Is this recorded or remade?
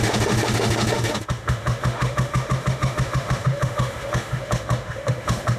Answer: remade